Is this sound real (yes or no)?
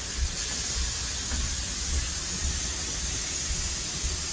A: yes